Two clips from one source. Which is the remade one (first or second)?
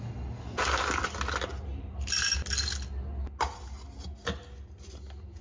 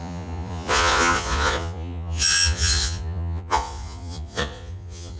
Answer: second